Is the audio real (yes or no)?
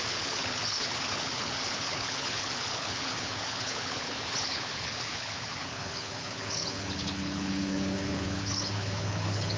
no